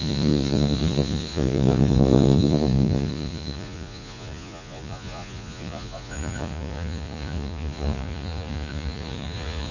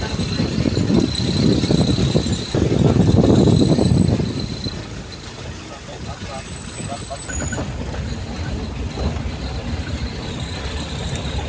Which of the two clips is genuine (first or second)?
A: second